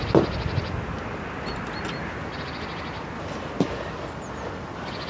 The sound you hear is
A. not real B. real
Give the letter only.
B